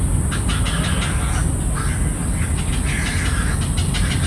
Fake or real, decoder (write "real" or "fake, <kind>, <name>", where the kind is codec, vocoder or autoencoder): real